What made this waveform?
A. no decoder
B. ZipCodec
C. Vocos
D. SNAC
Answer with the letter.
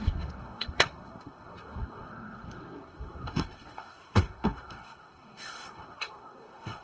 D